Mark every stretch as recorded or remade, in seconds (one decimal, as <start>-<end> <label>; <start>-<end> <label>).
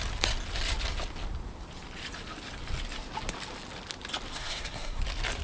0.0-4.3 recorded; 4.3-5.0 remade; 5.0-5.4 recorded